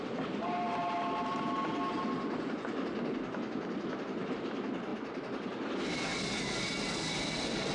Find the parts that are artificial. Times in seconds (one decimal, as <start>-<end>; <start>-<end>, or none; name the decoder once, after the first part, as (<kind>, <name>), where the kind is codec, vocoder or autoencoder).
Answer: none